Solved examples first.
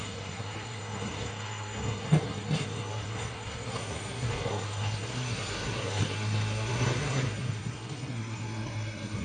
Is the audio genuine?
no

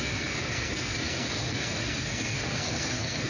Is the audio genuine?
no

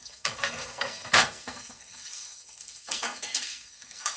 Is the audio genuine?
no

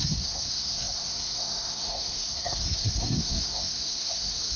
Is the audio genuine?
no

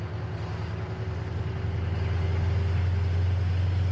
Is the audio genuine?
yes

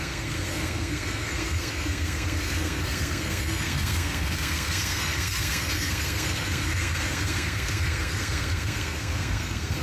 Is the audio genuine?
no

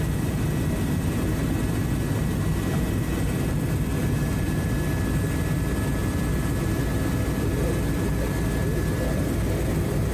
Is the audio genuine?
yes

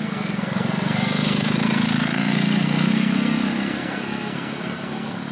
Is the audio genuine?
no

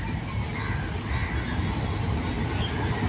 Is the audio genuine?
yes